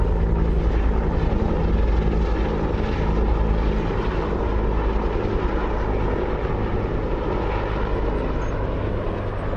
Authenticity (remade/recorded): recorded